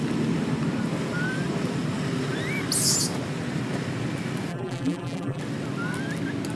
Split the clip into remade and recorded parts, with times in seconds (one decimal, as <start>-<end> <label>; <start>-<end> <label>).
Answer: 0.0-4.5 recorded; 4.5-5.4 remade; 5.4-6.6 recorded